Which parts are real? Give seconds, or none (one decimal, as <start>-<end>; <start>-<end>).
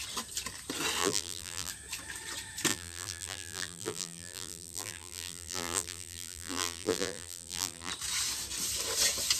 0.0-1.0; 1.7-2.7; 7.9-9.4